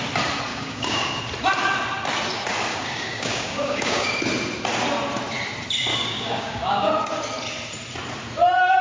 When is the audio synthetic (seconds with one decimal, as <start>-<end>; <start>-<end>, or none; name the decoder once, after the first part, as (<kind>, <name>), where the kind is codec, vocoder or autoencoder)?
0.5-1.2 (codec, DAC); 2.7-4.2; 5.9-6.9